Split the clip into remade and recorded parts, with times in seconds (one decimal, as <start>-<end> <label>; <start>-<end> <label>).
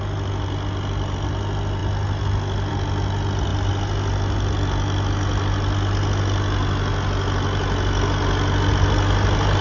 0.0-9.6 recorded